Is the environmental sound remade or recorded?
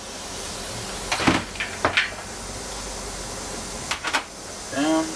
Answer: recorded